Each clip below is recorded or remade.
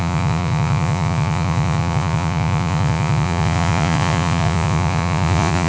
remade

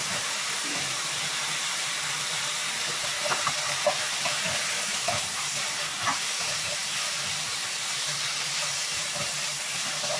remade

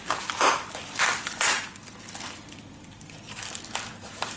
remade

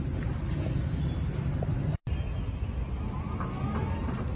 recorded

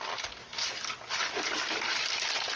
recorded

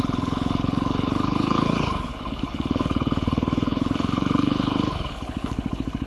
remade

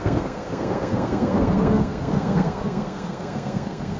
remade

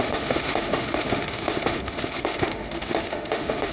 remade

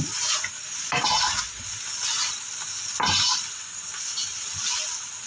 recorded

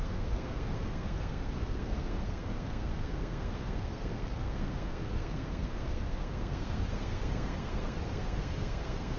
remade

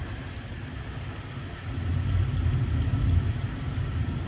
recorded